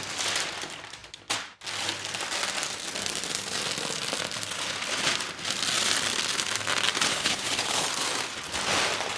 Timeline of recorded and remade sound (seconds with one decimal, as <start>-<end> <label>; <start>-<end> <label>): 0.0-7.1 recorded; 7.1-7.9 remade; 7.9-9.2 recorded